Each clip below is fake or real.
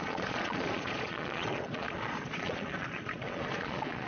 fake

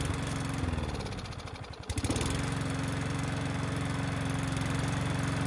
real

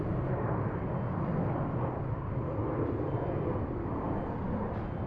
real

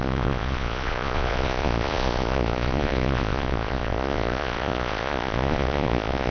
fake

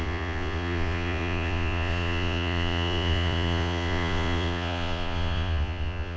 fake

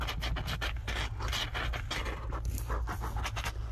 real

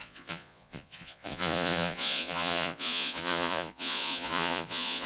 fake